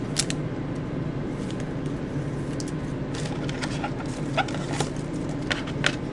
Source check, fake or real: real